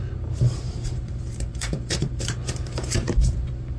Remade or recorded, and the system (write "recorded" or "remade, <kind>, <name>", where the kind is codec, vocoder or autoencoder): remade, vocoder, BigVGAN v2